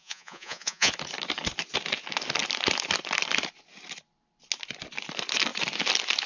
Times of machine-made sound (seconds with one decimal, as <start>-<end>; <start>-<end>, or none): 0.0-0.9